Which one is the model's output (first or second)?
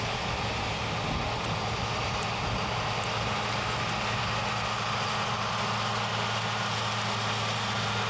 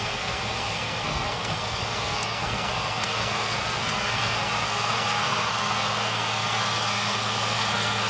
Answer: second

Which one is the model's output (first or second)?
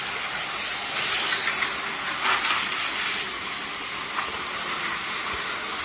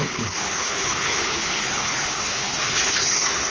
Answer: second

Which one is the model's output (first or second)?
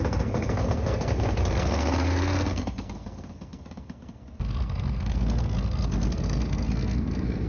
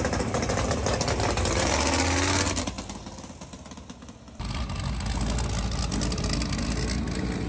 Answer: first